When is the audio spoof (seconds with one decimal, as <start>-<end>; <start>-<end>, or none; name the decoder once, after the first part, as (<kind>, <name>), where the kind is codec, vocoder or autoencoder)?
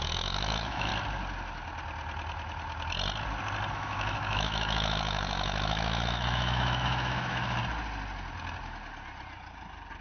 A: 0.0-0.9 (autoencoder, DAC-VAE); 3.7-7.6